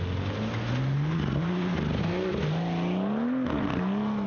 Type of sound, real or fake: real